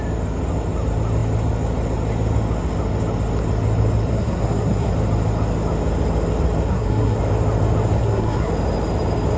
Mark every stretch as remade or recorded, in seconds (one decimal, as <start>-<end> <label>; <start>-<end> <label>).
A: 0.0-4.1 recorded; 4.1-4.9 remade; 4.9-6.7 recorded; 6.7-7.2 remade; 7.2-8.0 recorded; 8.0-8.5 remade; 8.5-9.4 recorded